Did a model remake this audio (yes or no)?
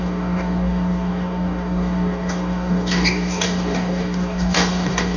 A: yes